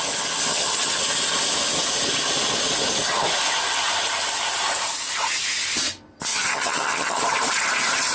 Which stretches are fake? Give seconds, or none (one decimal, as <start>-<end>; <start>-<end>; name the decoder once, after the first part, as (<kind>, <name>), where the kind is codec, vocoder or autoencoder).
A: 0.5-1.0 (vocoder, HiFi-GAN); 6.3-7.2